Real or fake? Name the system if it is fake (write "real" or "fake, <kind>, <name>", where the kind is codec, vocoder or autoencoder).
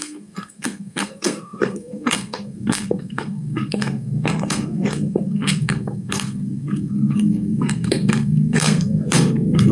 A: fake, codec, SNAC